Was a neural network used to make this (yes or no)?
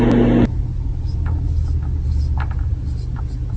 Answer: no